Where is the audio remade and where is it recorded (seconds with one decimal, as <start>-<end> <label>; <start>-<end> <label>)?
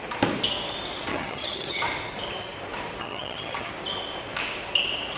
0.0-1.1 recorded; 1.1-1.8 remade; 1.8-3.0 recorded; 3.0-3.7 remade; 3.7-5.2 recorded